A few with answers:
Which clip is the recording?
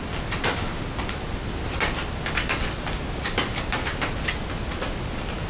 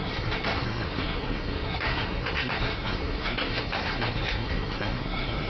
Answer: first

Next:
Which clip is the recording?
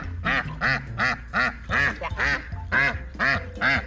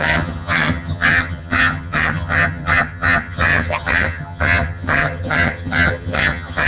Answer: first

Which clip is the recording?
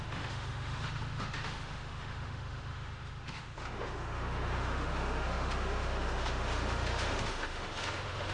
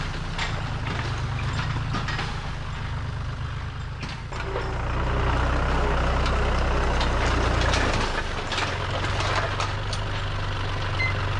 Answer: second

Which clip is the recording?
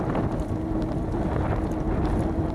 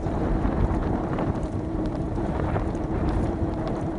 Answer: first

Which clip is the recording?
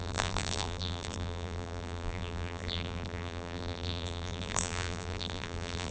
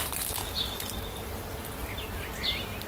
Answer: second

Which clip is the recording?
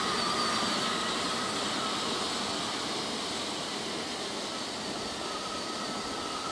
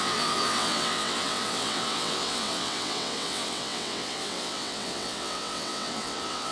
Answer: first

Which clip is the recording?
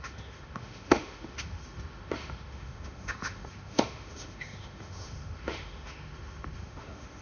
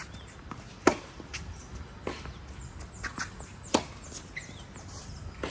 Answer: second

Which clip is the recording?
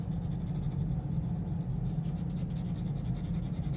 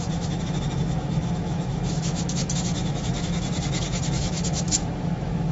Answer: first